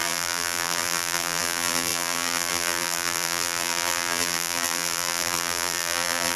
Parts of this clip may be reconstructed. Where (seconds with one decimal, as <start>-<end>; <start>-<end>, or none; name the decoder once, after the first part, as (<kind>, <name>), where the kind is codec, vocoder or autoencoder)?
0.0-6.4 (vocoder, BigVGAN v2)

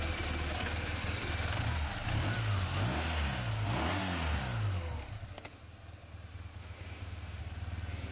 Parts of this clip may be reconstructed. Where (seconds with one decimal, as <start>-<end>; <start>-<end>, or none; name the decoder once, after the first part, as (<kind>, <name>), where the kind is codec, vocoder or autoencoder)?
6.6-7.4 (autoencoder, DAC-VAE)